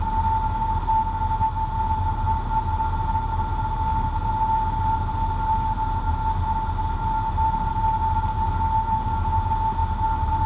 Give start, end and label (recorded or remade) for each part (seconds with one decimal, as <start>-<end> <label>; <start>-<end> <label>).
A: 0.0-10.5 recorded